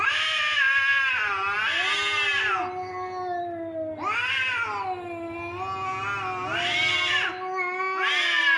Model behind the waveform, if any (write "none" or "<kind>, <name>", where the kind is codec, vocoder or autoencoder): none